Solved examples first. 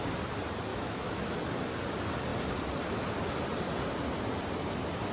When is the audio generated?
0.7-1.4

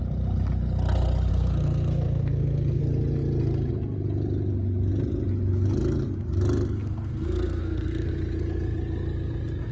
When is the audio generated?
1.3-2.8; 6.8-8.1

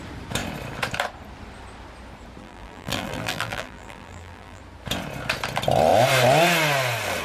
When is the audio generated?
2.4-4.6

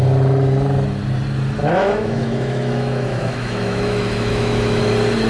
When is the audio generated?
1.6-4.8

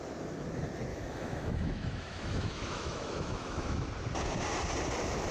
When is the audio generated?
0.9-3.9